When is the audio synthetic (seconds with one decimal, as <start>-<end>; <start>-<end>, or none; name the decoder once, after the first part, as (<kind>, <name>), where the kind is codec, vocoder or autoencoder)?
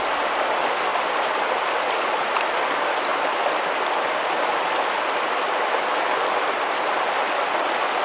0.9-2.5 (vocoder, BigVGAN v2); 3.1-4.2